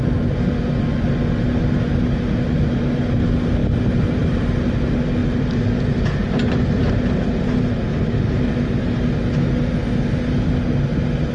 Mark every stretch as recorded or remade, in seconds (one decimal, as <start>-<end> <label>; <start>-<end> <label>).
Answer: 0.0-3.6 recorded; 3.6-4.4 remade; 4.4-5.2 recorded; 5.2-6.9 remade; 6.9-11.3 recorded